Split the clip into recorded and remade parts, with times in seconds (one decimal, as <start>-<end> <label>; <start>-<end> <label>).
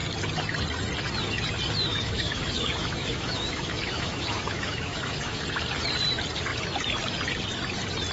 0.0-1.9 recorded; 1.9-5.4 remade; 5.4-8.1 recorded